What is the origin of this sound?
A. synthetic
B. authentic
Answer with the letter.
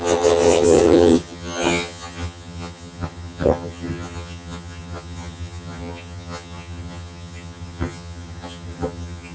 A